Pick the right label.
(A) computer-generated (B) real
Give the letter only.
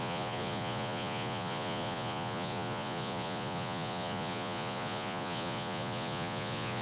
A